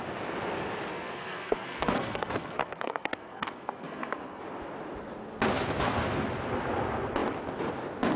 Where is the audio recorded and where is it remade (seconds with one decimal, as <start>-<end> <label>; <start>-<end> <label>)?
0.0-0.9 recorded; 0.9-4.4 remade; 4.4-8.2 recorded